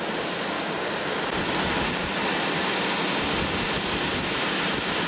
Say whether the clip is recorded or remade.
recorded